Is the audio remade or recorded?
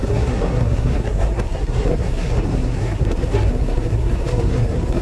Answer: remade